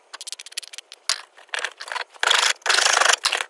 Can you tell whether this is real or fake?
real